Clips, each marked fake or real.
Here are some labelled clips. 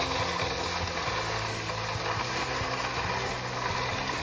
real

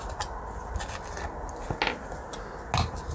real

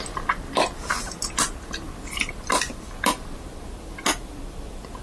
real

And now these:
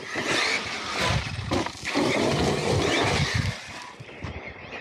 real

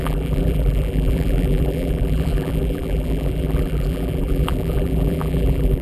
fake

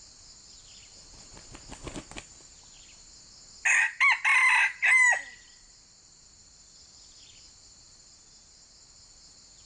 real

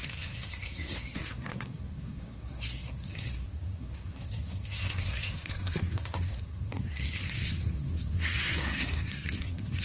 fake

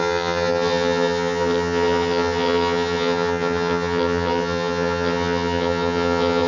fake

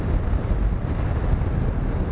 real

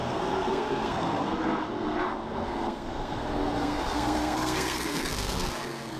fake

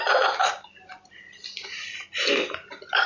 real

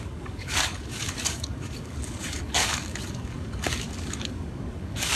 fake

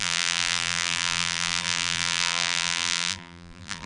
fake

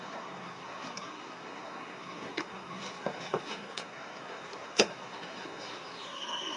fake